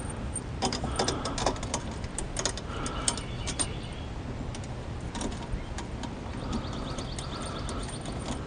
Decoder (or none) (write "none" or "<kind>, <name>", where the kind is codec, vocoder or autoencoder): none